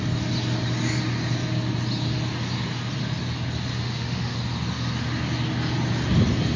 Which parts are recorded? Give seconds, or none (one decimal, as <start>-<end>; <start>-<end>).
0.0-3.7; 4.4-6.6